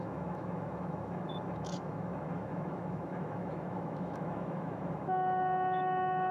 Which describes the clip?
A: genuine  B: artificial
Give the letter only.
B